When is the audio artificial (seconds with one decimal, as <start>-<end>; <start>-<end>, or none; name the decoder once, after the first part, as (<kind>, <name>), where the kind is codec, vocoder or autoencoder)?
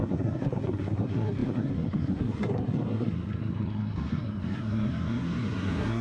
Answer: 0.0-6.0 (codec, SNAC)